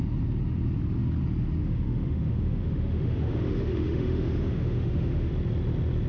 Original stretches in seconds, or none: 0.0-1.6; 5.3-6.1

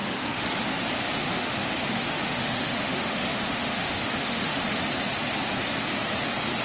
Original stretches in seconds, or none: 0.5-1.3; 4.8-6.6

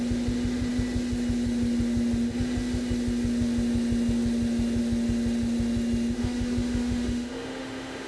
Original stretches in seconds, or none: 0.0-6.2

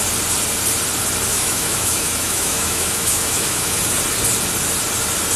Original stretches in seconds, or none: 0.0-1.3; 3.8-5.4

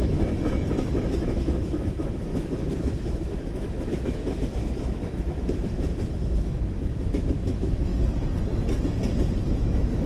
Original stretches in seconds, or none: 7.9-9.5

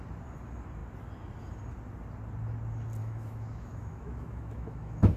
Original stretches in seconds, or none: 0.0-3.0